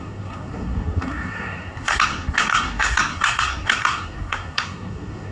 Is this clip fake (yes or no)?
yes